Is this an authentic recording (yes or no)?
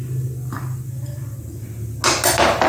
yes